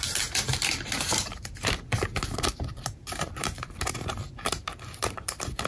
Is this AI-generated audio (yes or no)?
yes